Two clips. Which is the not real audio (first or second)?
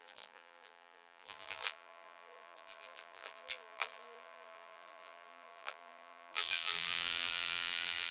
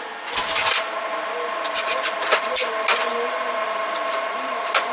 first